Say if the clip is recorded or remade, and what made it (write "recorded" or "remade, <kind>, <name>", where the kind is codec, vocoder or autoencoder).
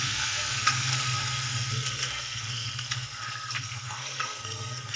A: remade, codec, SNAC